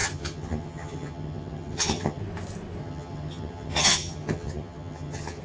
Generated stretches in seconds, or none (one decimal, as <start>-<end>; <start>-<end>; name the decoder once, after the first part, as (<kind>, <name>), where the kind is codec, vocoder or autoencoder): 0.0-2.2 (vocoder, HiFi-GAN); 2.8-5.4